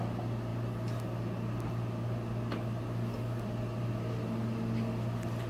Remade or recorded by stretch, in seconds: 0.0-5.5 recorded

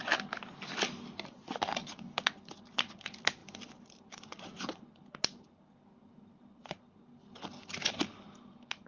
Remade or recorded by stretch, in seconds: 0.0-8.9 recorded

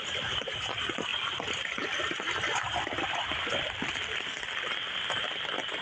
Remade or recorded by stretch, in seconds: 0.0-1.1 recorded; 1.1-4.6 remade; 4.6-5.8 recorded

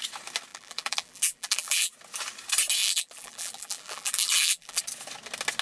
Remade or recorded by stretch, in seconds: 0.0-0.5 recorded; 0.5-1.9 remade; 1.9-2.8 recorded; 2.8-4.8 remade; 4.8-5.6 recorded

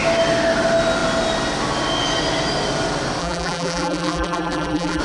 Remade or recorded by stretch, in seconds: 0.0-3.2 recorded; 3.2-5.0 remade

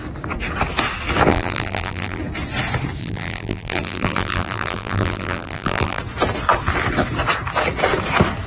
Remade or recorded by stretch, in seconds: 0.0-1.3 recorded; 1.3-2.2 remade; 2.2-3.0 recorded; 3.0-6.0 remade; 6.0-8.5 recorded

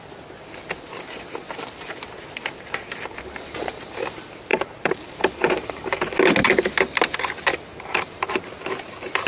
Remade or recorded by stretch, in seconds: 0.0-4.5 recorded; 4.5-6.1 remade; 6.1-7.7 recorded; 7.7-8.3 remade; 8.3-9.3 recorded

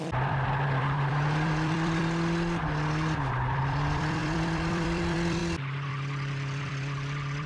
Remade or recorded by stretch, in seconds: 0.0-2.0 remade; 2.0-3.5 recorded; 3.5-5.4 remade; 5.4-5.9 recorded; 5.9-7.5 remade